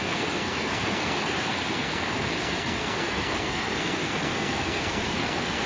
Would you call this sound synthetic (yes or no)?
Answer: yes